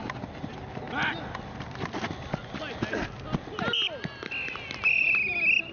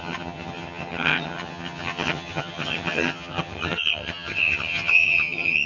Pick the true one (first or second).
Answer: first